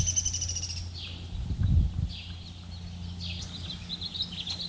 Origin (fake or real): real